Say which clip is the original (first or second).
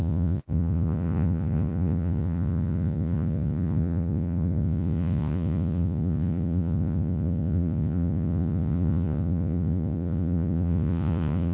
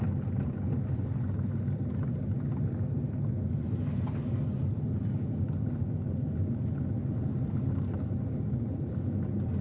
second